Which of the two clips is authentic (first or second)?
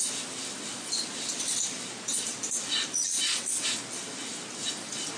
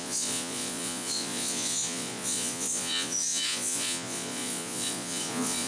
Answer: first